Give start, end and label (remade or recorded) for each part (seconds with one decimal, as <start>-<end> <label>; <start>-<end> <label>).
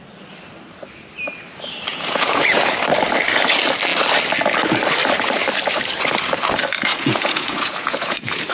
0.0-1.9 recorded; 1.9-2.6 remade; 2.6-6.9 recorded; 6.9-8.5 remade